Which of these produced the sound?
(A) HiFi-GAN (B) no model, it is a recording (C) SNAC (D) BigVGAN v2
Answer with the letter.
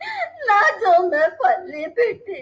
B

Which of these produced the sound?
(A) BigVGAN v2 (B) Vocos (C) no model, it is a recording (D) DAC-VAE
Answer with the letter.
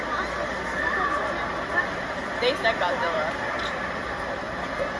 C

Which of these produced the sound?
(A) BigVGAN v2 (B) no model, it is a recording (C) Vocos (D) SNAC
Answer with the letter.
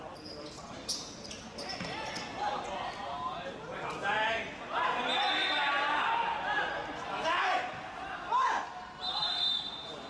B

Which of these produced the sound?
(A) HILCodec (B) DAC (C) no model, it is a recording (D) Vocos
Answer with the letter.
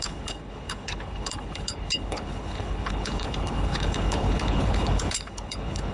A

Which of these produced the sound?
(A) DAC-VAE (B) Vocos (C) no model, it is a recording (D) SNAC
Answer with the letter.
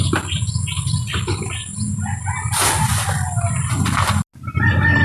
C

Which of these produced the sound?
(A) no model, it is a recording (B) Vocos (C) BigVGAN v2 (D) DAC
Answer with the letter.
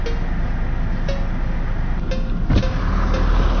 A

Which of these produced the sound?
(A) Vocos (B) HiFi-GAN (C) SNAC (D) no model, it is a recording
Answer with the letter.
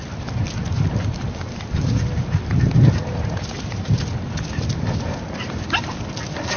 D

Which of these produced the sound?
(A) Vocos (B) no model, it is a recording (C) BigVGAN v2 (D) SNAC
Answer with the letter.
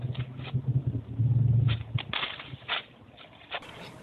B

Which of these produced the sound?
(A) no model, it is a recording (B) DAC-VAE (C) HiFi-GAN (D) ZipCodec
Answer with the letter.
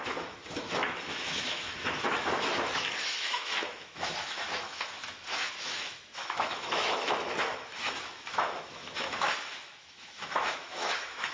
B